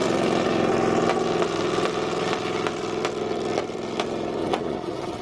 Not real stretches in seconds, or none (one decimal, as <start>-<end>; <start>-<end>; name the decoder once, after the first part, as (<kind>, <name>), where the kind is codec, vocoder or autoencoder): 4.4-5.2 (vocoder, Vocos)